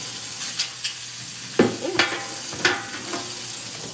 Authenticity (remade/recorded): recorded